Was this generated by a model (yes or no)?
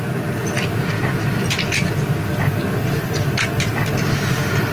no